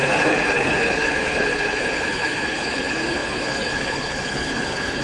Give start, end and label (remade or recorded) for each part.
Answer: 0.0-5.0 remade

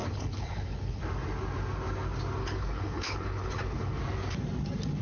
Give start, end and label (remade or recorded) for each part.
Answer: 0.0-1.0 remade; 1.0-2.4 recorded; 2.4-4.0 remade; 4.0-5.0 recorded

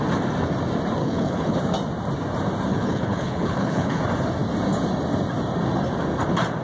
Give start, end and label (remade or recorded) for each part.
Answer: 0.0-1.0 recorded; 1.0-1.6 remade; 1.6-2.7 recorded; 2.7-4.0 remade; 4.0-6.6 recorded